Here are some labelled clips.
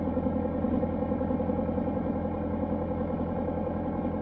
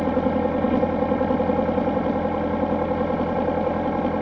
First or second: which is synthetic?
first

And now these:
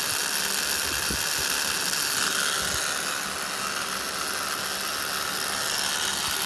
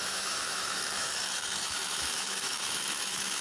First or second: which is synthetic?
second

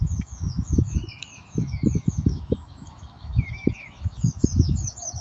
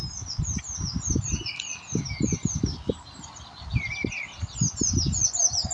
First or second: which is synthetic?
first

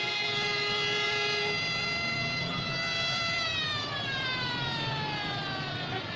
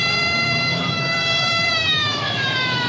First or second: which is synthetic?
second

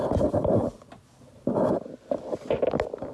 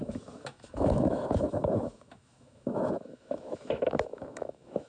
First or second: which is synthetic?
second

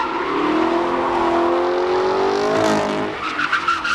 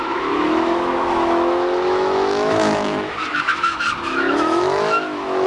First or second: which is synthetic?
second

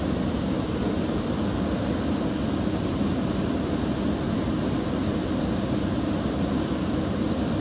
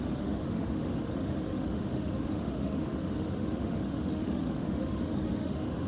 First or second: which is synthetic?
second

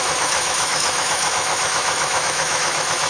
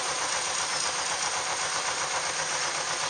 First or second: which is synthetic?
first